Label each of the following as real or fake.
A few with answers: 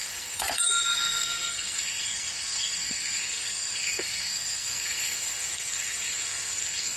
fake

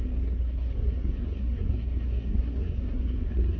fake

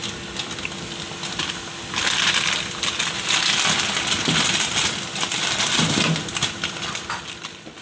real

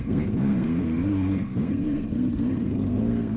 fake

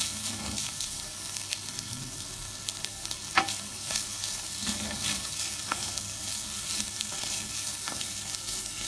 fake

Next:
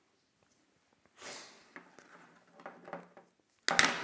real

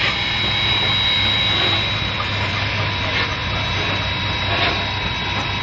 real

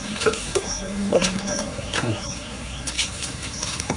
fake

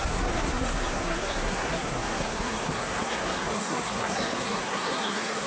fake